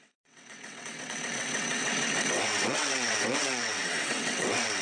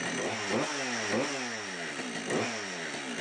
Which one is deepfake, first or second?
first